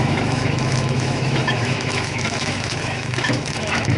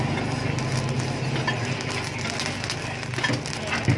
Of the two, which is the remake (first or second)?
first